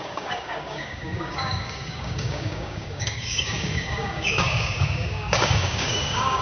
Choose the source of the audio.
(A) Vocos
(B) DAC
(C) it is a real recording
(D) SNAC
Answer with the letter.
B